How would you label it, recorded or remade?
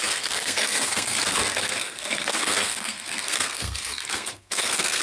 remade